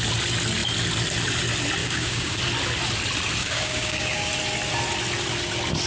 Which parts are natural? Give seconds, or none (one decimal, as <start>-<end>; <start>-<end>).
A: 0.0-1.8; 2.4-3.4; 4.3-5.9